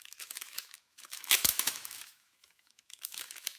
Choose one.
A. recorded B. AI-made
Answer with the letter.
B